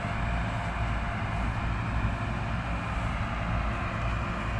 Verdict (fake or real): real